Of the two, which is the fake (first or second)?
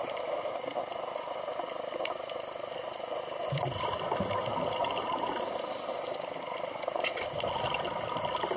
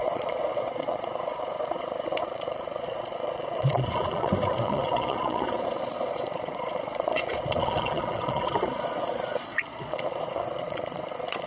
second